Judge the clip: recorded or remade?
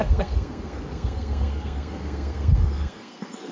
remade